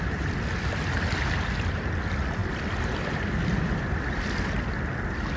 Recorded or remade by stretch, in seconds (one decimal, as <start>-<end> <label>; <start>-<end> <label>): 0.0-2.4 recorded; 2.4-4.7 remade; 4.7-5.4 recorded